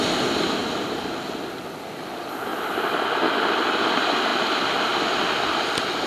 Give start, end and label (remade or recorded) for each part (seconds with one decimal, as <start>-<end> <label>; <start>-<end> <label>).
0.0-6.1 recorded